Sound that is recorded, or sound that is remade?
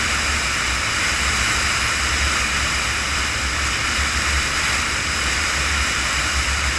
recorded